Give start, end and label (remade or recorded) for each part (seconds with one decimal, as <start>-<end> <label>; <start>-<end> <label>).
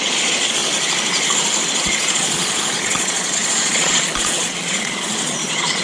0.0-0.6 remade; 0.6-1.7 recorded; 1.7-5.8 remade